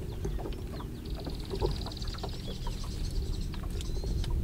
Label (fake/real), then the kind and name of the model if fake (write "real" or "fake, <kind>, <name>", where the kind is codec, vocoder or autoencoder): real